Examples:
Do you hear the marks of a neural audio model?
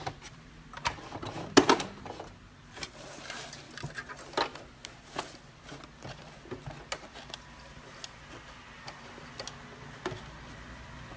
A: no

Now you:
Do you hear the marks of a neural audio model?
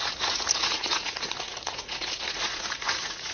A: yes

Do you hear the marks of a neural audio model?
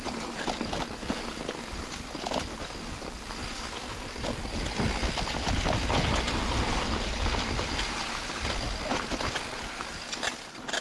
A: no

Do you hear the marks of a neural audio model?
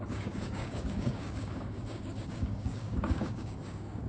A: yes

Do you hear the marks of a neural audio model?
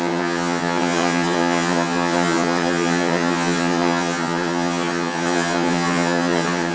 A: yes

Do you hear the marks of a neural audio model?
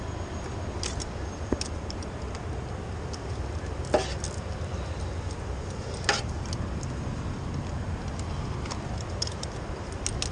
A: no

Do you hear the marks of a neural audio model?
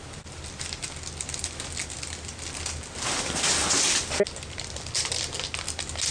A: no